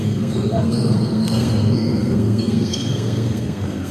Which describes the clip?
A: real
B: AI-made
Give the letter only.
B